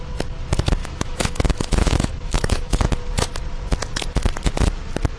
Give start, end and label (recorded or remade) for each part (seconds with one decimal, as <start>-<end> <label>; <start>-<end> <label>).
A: 0.0-0.8 recorded; 0.8-2.9 remade; 2.9-5.2 recorded